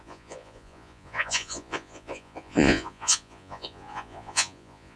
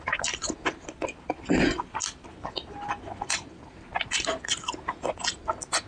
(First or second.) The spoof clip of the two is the first